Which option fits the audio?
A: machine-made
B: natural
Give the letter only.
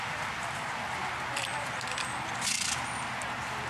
B